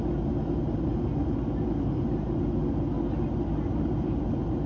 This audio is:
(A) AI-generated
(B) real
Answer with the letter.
B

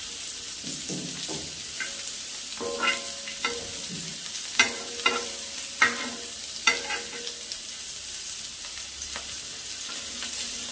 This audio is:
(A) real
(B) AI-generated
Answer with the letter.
A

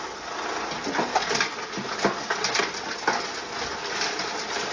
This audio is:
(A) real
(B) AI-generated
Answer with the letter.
A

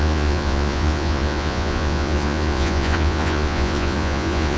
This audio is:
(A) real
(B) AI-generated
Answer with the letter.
B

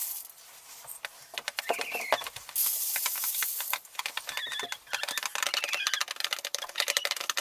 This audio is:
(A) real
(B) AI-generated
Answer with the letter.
A